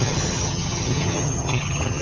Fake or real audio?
fake